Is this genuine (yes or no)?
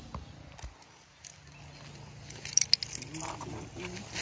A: yes